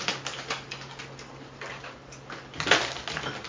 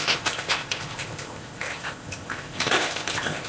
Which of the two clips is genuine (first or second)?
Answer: first